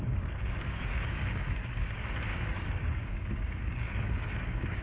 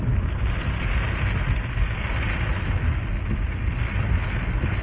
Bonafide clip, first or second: second